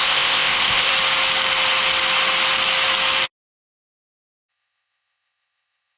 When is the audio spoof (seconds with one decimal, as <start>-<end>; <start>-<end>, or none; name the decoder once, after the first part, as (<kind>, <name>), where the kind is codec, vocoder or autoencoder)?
0.0-0.9 (codec, ZipCodec); 4.5-6.0